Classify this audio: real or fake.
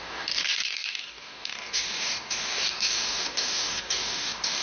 fake